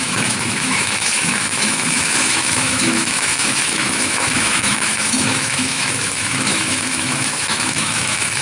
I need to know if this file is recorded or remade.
remade